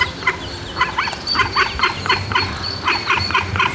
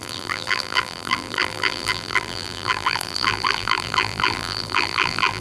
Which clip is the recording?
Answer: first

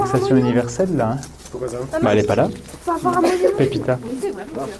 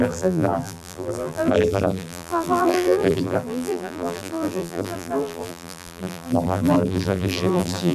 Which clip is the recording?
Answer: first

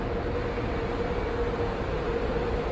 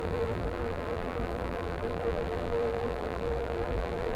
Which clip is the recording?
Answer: first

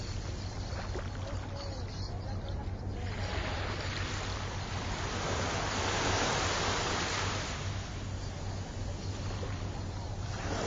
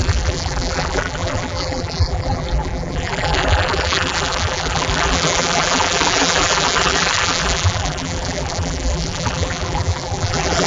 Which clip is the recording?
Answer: first